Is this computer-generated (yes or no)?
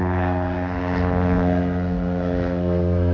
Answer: yes